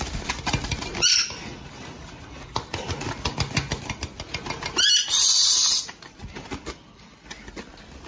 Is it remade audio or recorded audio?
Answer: recorded